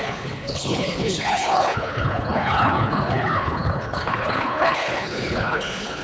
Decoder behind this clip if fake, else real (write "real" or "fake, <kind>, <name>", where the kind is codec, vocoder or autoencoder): fake, codec, HILCodec